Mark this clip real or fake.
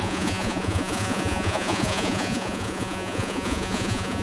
fake